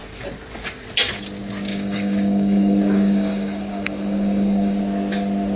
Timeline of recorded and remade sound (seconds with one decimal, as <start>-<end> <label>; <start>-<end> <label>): 0.0-1.7 recorded; 1.7-4.8 remade; 4.8-5.6 recorded